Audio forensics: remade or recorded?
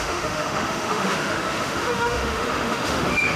remade